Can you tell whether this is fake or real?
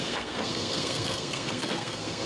fake